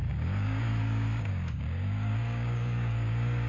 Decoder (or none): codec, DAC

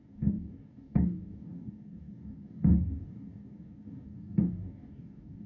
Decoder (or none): codec, DAC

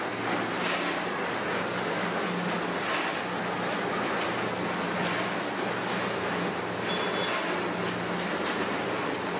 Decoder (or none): none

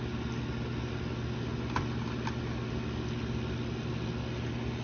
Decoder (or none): none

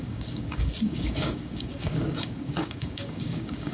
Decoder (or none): codec, DAC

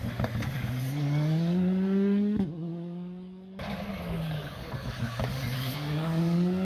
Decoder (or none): codec, DAC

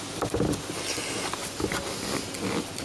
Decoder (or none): none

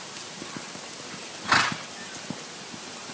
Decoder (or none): none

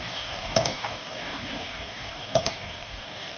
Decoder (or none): codec, DAC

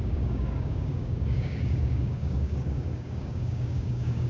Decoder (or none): codec, DAC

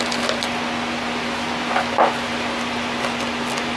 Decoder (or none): none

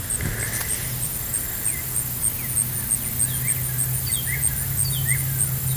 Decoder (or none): none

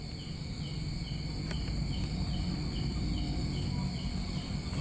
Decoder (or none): none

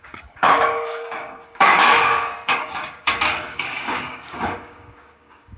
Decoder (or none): codec, DAC